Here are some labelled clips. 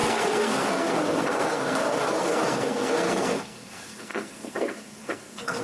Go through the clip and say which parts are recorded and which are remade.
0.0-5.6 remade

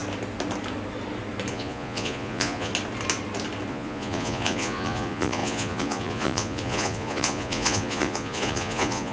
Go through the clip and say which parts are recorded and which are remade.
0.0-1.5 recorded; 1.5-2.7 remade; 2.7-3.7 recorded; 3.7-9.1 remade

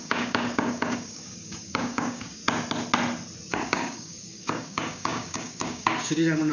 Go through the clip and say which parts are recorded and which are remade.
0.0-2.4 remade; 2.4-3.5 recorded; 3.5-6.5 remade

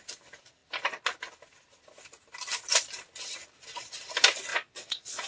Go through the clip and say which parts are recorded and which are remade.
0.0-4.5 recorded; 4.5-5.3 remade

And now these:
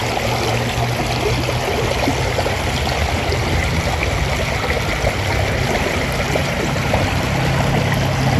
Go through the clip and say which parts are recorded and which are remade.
0.0-6.4 recorded; 6.4-7.0 remade; 7.0-8.4 recorded

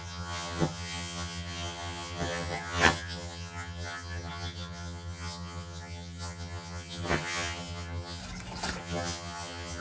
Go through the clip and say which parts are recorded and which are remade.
0.0-8.2 remade; 8.2-8.8 recorded; 8.8-9.8 remade